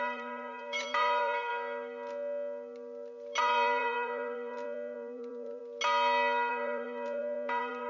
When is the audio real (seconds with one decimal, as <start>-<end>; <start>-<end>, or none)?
1.5-3.4; 5.6-6.5